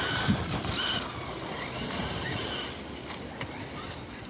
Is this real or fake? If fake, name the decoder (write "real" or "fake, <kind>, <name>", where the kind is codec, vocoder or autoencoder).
real